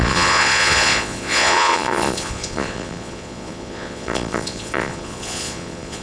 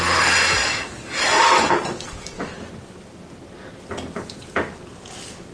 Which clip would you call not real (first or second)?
first